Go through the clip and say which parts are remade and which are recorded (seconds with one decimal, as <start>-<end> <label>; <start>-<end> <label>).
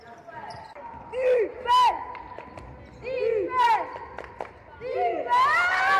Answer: 0.0-6.0 recorded